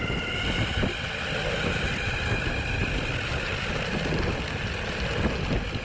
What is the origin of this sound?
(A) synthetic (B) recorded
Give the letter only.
B